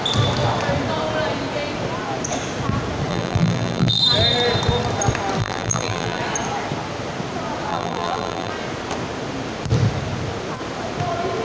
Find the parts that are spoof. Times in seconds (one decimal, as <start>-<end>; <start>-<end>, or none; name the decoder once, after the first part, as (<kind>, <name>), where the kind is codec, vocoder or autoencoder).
3.1-4.0 (vocoder, BigVGAN v2); 5.4-6.2; 7.7-8.5